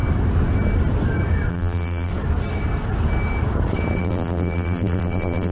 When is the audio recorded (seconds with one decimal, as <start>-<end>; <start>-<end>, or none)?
0.0-1.5; 2.1-4.0